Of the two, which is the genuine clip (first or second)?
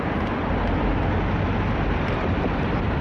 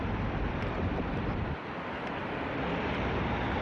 first